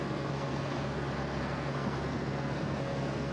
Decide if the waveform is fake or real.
fake